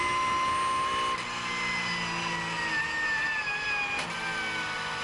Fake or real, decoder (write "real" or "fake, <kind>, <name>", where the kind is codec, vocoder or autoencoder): real